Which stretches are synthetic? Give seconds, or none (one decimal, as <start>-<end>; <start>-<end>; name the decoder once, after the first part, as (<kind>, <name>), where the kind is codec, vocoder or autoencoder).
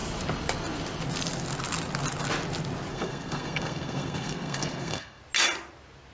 2.9-5.2 (codec, SNAC)